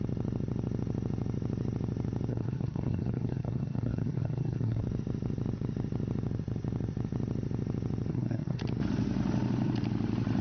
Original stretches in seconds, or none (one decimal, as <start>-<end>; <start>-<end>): 0.0-2.3; 4.8-8.1; 8.6-10.4